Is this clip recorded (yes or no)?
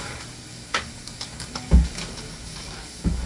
no